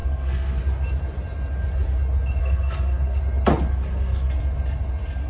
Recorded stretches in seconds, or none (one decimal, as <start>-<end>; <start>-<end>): 0.6-2.4; 3.2-3.7; 4.3-5.3